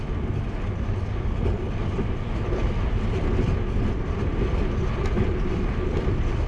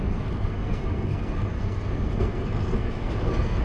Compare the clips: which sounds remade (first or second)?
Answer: second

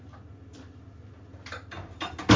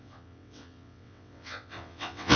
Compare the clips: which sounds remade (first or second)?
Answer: second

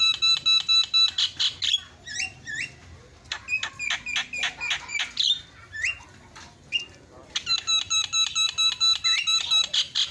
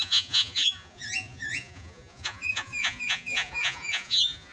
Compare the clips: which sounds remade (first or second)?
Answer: second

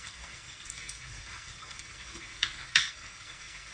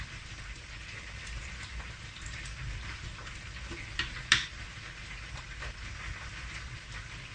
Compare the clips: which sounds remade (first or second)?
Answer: first